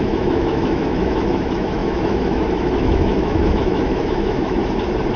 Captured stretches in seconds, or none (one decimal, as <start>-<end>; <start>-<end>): 4.6-5.2